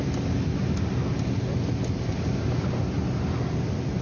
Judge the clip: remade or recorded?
recorded